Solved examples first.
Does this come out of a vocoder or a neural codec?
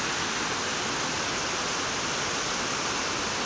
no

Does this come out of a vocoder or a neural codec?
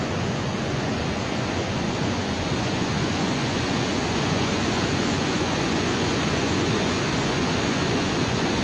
yes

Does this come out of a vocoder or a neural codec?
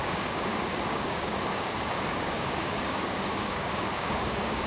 yes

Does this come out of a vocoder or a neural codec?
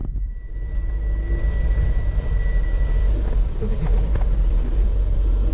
no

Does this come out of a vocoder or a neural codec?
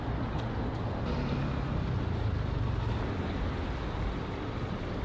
no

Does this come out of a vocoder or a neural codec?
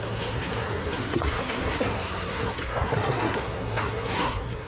yes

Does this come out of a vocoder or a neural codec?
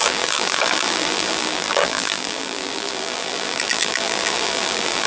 yes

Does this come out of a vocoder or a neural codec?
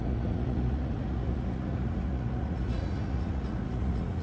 yes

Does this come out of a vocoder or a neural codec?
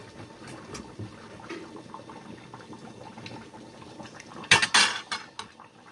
no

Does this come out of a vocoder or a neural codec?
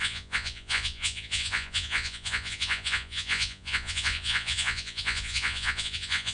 yes